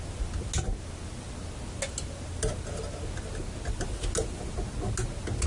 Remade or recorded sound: recorded